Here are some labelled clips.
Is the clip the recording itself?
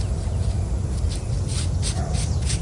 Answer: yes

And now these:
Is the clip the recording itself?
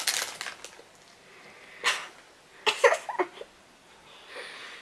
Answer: yes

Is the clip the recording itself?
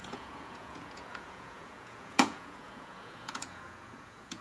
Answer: no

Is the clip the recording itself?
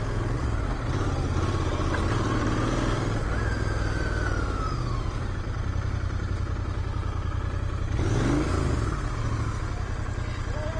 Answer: yes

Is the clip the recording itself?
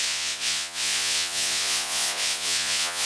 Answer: no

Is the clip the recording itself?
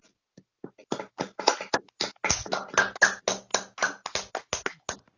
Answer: yes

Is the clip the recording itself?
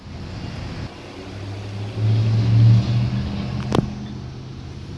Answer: yes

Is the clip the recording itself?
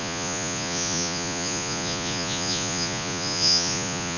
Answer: no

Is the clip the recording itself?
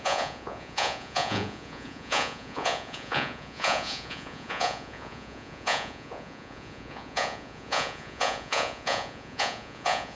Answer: no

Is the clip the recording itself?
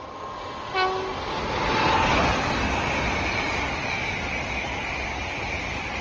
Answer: yes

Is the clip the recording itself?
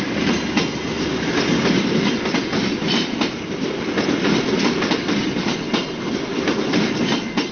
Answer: yes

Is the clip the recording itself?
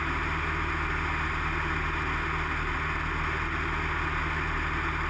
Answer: yes